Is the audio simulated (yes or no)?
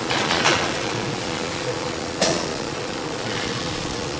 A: yes